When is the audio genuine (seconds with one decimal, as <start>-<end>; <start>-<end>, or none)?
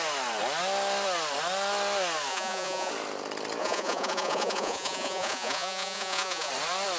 0.0-2.3; 2.9-3.6; 6.5-7.0